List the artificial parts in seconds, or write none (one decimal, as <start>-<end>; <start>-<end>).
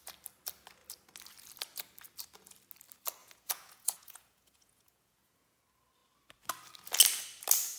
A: 3.2-5.6